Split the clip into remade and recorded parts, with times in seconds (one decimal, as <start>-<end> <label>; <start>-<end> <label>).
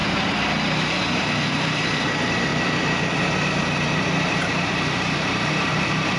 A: 0.0-1.1 recorded; 1.1-2.5 remade; 2.5-3.9 recorded; 3.9-6.2 remade